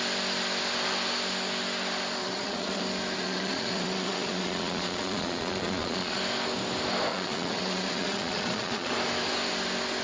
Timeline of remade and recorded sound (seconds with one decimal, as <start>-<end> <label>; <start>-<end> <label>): 0.0-2.2 recorded; 2.2-2.8 remade; 2.8-3.2 recorded; 3.2-6.2 remade; 6.2-7.1 recorded; 7.1-8.9 remade; 8.9-10.0 recorded

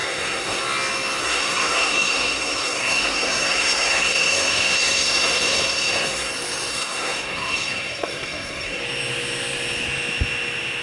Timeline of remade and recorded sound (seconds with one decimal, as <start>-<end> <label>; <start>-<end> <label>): 0.0-0.6 remade; 0.6-1.2 recorded; 1.2-6.3 remade; 6.3-6.7 recorded; 6.7-8.8 remade; 8.8-10.8 recorded

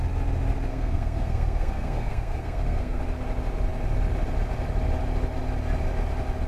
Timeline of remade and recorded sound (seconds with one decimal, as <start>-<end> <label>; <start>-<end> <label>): 0.0-0.7 recorded; 0.7-3.0 remade; 3.0-6.5 recorded

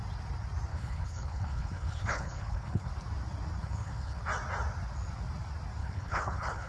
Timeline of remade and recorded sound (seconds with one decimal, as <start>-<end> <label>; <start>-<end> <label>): 0.0-0.7 recorded; 0.7-2.9 remade; 2.9-3.6 recorded; 3.6-4.2 remade; 4.2-5.8 recorded; 5.8-6.7 remade

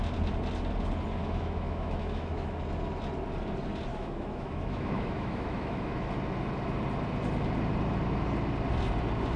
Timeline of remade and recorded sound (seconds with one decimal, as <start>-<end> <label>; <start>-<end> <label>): 0.0-1.2 recorded; 1.2-2.6 remade; 2.6-3.9 recorded; 3.9-6.1 remade; 6.1-9.4 recorded